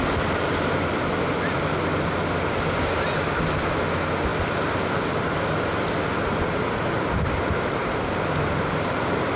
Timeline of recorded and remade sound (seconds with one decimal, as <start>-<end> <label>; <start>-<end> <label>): 0.0-9.4 recorded